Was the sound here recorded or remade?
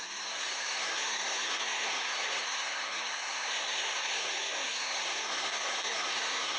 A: remade